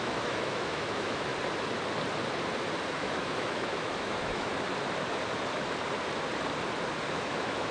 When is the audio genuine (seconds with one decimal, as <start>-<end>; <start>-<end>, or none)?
1.3-2.9; 4.5-7.1